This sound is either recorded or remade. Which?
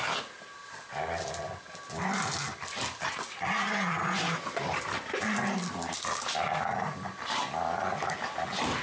recorded